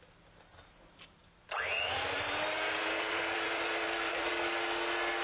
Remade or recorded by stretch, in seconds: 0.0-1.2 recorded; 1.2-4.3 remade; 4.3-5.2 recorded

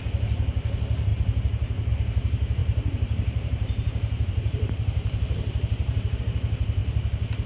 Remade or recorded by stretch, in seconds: 0.0-2.6 recorded; 2.6-6.2 remade; 6.2-7.5 recorded

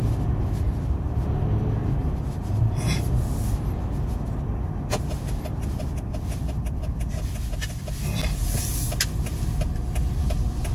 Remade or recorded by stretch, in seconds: 0.0-1.8 recorded; 1.8-3.1 remade; 3.1-10.7 recorded

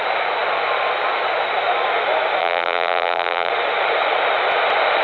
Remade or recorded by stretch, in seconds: 0.0-2.4 recorded; 2.4-3.5 remade; 3.5-5.0 recorded